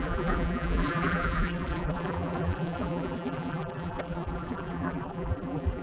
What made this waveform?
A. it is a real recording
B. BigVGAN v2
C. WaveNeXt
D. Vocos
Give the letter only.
B